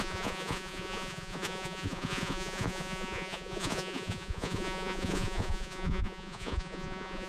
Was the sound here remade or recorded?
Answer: remade